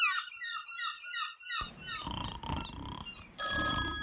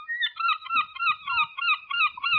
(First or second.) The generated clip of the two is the first